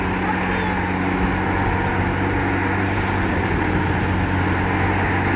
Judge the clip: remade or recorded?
recorded